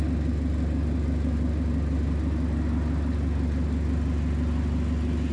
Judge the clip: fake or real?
real